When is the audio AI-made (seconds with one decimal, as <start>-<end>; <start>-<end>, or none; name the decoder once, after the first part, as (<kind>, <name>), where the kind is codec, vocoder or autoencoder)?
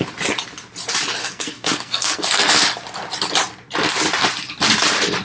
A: 1.2-2.5 (codec, SNAC)